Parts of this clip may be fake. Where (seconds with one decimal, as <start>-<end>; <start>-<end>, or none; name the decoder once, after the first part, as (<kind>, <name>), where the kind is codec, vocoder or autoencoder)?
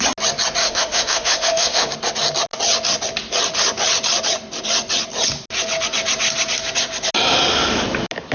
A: 0.6-1.9 (autoencoder, DAC-VAE)